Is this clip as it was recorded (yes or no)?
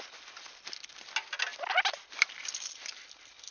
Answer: yes